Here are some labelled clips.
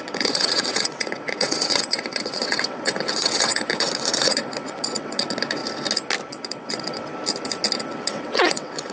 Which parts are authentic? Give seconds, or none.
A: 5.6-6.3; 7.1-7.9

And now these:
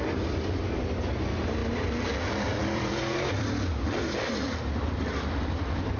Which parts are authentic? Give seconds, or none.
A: 0.0-2.5; 3.7-6.0

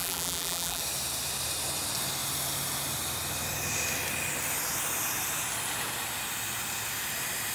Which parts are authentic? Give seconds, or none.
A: 0.8-7.5

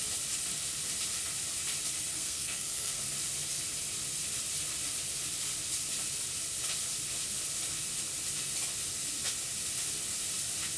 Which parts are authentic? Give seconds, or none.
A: 0.0-2.1; 3.0-10.8